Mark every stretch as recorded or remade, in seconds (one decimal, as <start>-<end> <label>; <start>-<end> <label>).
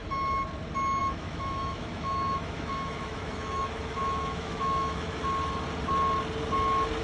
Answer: 0.0-1.0 recorded; 1.0-5.2 remade; 5.2-7.0 recorded